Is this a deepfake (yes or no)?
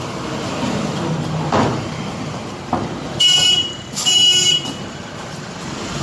yes